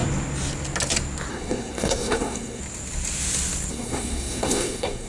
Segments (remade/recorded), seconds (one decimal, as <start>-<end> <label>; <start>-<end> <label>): 0.0-1.3 recorded; 1.3-2.6 remade; 2.6-3.7 recorded; 3.7-5.1 remade

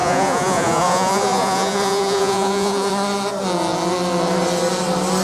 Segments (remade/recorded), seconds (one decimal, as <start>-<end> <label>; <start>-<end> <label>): 0.0-2.9 remade; 2.9-5.2 recorded

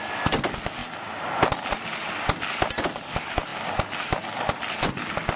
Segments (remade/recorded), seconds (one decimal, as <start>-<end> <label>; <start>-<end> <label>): 0.0-5.4 recorded

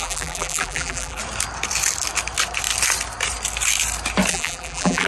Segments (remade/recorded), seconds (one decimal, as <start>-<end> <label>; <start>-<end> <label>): 0.0-1.2 remade; 1.2-4.3 recorded; 4.3-5.1 remade

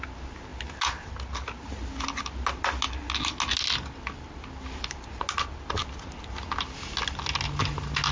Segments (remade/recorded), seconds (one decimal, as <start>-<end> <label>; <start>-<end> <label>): 0.0-8.1 recorded